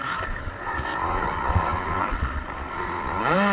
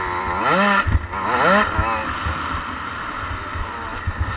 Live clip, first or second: second